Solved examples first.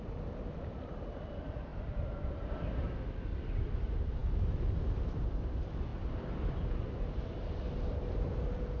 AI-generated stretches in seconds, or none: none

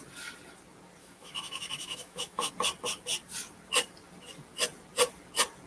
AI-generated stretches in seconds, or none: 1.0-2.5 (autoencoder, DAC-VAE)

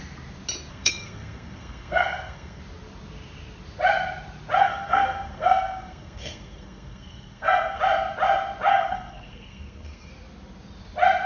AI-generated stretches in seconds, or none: 0.7-2.6 (codec, SNAC); 4.6-7.8; 8.7-10.1

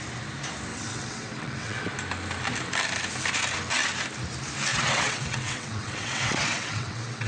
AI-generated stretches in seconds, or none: 0.7-1.9 (vocoder, WaveNeXt); 4.7-7.3

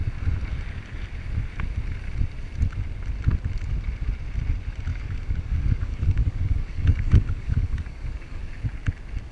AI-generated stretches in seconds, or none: 4.9-8.4 (codec, DAC)

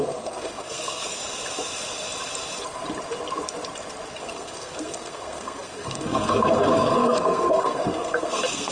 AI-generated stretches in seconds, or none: 0.0-1.2 (codec, SNAC); 4.2-8.7

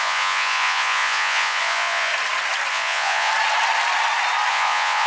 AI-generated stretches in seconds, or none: 0.0-2.1 (vocoder, Vocos); 2.7-3.3; 4.5-5.1